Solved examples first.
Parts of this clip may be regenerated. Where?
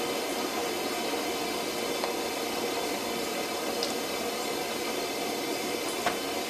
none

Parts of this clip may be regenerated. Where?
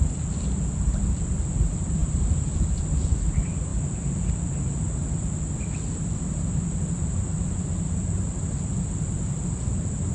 none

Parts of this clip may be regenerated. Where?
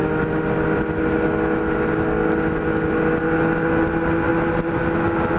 none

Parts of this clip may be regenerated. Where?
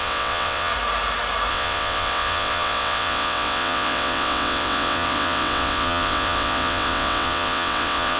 0.0-0.7 (vocoder, WaveNeXt); 1.5-8.2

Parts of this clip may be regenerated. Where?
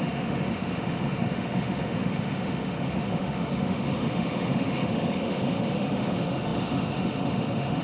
0.0-7.8 (autoencoder, DAC-VAE)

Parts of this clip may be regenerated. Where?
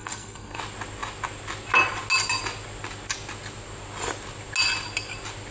0.0-0.6 (codec, SNAC)